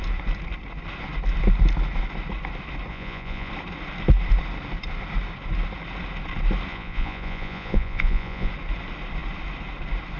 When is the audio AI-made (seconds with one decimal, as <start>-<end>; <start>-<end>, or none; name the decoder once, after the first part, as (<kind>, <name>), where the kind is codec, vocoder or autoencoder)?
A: 2.9-3.5 (vocoder, Vocos); 6.7-8.5